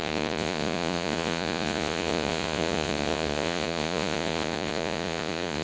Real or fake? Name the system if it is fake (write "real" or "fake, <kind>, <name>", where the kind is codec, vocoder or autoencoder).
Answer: fake, vocoder, Vocos